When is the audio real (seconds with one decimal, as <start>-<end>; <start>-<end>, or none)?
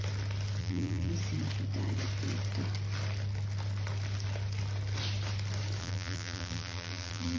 0.0-0.6; 1.1-5.8